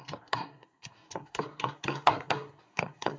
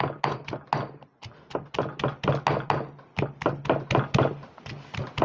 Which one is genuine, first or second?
second